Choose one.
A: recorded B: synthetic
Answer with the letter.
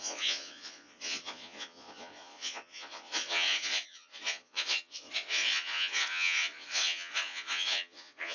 B